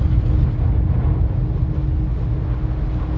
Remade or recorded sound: recorded